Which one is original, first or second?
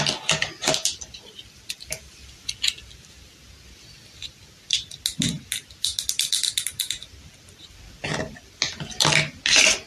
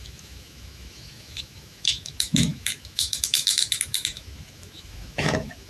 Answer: first